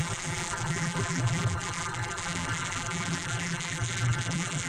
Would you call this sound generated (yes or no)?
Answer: yes